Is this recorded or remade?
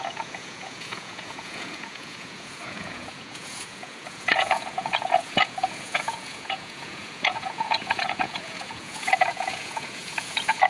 remade